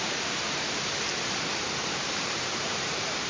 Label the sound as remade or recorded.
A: remade